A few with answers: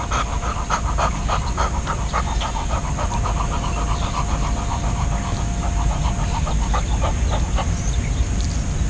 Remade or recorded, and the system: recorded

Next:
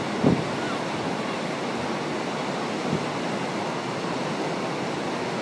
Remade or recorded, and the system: recorded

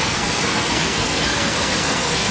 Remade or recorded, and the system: remade, codec, SNAC